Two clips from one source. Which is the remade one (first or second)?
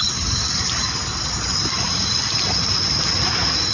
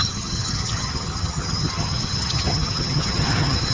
second